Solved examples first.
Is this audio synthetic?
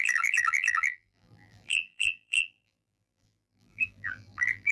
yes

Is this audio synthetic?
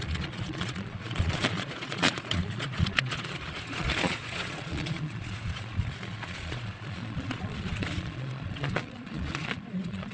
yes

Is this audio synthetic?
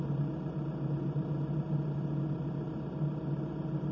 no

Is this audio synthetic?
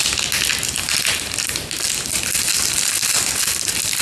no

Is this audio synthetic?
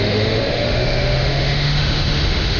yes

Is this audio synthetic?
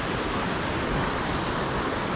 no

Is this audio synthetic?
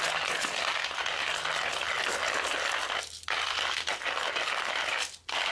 no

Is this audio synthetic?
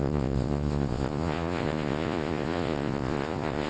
yes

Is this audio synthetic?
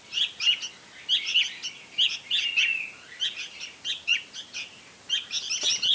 no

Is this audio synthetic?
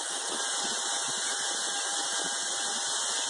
no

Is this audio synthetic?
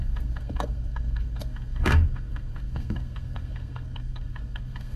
yes